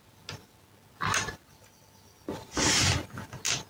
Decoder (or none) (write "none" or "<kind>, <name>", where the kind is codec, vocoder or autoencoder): none